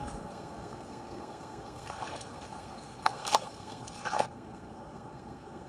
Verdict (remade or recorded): remade